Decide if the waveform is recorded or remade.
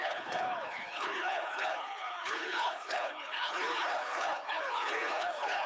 remade